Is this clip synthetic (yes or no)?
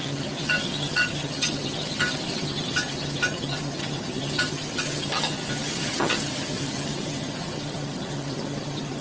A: yes